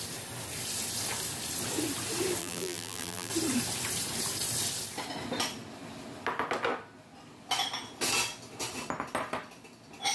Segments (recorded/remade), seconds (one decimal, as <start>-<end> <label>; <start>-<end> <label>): 0.0-2.4 recorded; 2.4-3.3 remade; 3.3-10.1 recorded